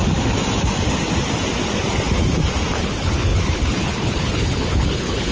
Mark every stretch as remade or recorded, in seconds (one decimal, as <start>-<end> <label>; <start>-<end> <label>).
0.0-2.8 recorded; 2.8-5.3 remade

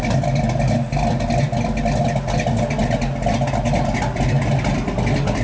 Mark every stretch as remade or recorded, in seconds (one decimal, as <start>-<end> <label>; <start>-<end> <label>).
0.0-5.4 recorded

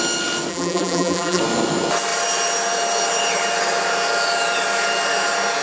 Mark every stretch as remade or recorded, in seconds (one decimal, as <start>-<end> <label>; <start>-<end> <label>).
0.0-0.5 recorded; 0.5-1.4 remade; 1.4-5.6 recorded